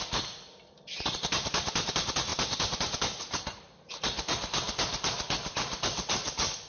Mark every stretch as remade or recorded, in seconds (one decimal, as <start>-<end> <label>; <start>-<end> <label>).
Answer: 0.0-6.7 recorded